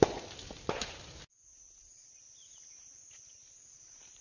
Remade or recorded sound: recorded